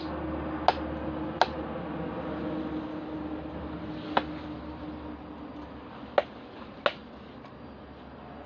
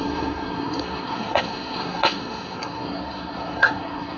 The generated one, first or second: second